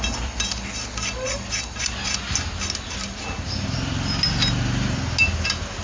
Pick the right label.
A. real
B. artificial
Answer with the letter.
A